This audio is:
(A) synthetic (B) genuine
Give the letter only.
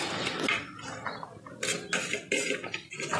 B